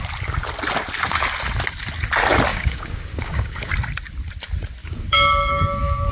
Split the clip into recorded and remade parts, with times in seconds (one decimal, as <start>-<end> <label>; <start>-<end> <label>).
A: 0.0-2.5 recorded; 2.5-3.7 remade; 3.7-4.8 recorded; 4.8-6.1 remade

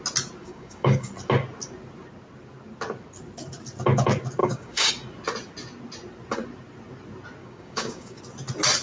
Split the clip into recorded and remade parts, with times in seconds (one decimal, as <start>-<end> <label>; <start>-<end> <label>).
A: 0.0-0.4 recorded; 0.4-1.1 remade; 1.1-4.4 recorded; 4.4-4.9 remade; 4.9-7.4 recorded; 7.4-8.2 remade; 8.2-8.8 recorded

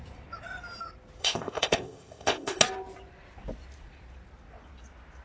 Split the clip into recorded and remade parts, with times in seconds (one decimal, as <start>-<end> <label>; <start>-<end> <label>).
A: 0.0-1.2 recorded; 1.2-2.6 remade; 2.6-5.2 recorded

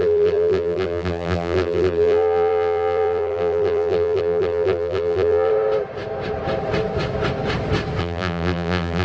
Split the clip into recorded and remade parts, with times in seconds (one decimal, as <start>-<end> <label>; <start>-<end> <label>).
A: 0.0-5.5 remade; 5.5-8.0 recorded; 8.0-9.0 remade